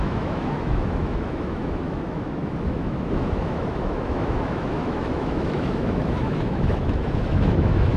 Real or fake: fake